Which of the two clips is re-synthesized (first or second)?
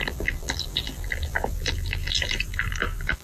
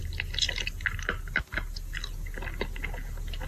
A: first